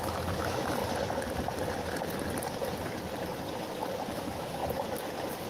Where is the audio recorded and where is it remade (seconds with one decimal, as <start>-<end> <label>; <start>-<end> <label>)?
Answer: 0.0-0.8 remade; 0.8-4.1 recorded; 4.1-4.6 remade; 4.6-5.5 recorded